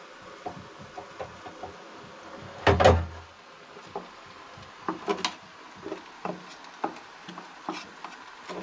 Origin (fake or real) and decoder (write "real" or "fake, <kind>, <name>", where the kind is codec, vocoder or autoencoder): real